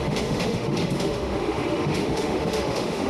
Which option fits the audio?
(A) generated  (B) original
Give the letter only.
A